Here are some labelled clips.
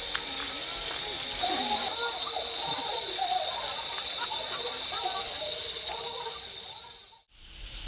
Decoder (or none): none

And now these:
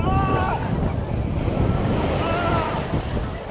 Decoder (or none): none